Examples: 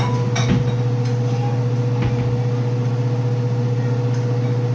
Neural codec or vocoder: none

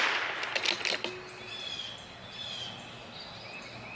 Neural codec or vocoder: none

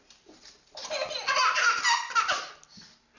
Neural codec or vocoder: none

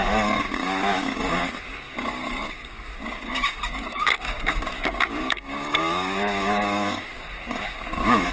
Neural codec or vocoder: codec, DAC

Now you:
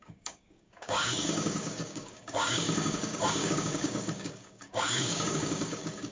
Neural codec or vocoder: codec, DAC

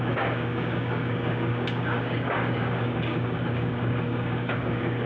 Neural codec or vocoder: codec, DAC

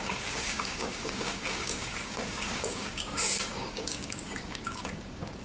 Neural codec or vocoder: codec, DAC